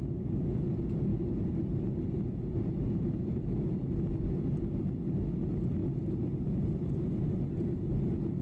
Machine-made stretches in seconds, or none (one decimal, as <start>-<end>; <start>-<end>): 1.1-4.1; 5.8-8.0